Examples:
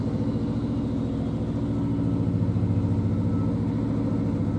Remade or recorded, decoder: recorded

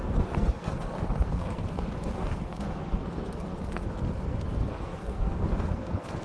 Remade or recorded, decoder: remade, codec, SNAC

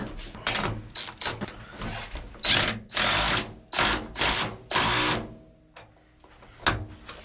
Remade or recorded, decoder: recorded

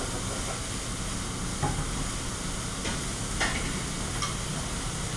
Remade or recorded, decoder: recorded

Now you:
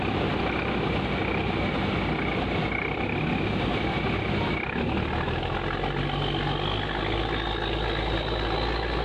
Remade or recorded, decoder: recorded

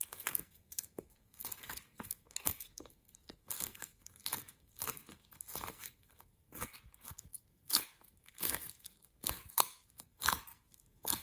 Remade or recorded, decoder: remade, codec, SNAC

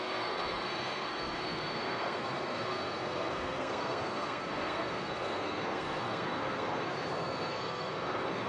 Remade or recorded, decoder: remade, codec, SNAC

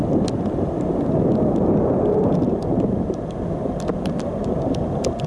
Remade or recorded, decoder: recorded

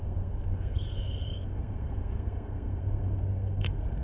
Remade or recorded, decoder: remade, codec, SNAC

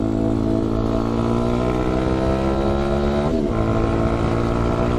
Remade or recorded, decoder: recorded